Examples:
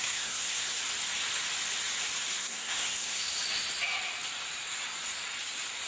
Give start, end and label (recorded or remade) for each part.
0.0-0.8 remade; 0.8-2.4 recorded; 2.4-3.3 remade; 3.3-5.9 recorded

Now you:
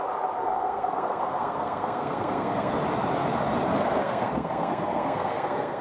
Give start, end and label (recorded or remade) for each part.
0.0-0.4 recorded; 0.4-2.7 remade; 2.7-4.0 recorded; 4.0-5.8 remade

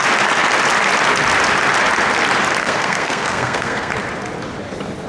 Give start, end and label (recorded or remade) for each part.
0.0-2.6 recorded; 2.6-3.9 remade; 3.9-5.1 recorded

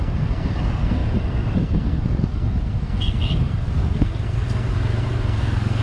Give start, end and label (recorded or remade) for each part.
0.0-5.8 remade

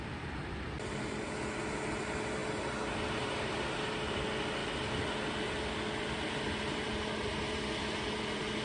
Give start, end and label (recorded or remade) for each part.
0.0-8.6 recorded